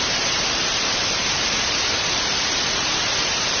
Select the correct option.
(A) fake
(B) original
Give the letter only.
A